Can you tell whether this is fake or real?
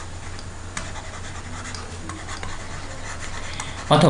real